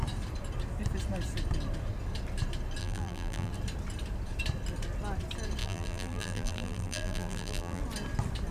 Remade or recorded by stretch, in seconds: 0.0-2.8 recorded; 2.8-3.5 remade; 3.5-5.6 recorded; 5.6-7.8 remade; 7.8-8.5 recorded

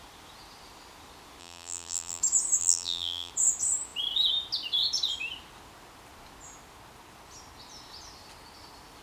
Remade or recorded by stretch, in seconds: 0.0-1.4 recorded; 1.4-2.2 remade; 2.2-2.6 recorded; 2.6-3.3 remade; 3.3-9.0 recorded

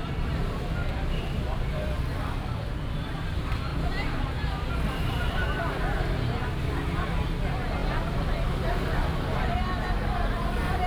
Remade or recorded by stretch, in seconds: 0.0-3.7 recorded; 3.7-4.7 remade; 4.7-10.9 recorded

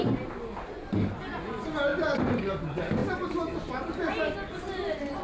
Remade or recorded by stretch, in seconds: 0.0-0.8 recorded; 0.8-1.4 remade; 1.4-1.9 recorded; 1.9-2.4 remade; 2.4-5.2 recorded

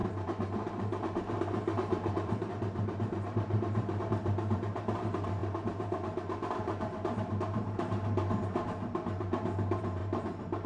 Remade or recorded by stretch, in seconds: 0.0-10.0 remade; 10.0-10.7 recorded

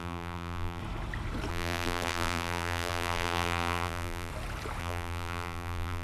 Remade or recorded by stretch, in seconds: 0.0-0.8 remade; 0.8-1.5 recorded; 1.5-4.3 remade; 4.3-4.8 recorded; 4.8-6.0 remade

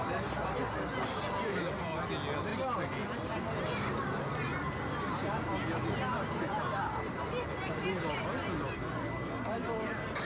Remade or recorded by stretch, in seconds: 0.0-10.2 recorded

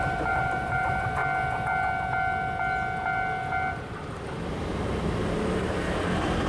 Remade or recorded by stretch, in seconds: 0.0-1.2 remade; 1.2-4.7 recorded; 4.7-6.5 remade